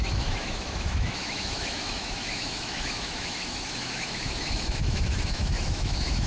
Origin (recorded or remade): remade